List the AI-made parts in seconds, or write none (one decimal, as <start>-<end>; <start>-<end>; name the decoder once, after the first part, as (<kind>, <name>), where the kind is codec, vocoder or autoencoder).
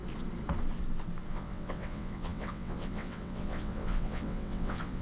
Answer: 1.3-5.0 (vocoder, WaveNeXt)